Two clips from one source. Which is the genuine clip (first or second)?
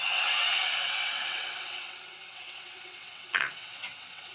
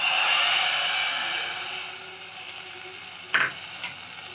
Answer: second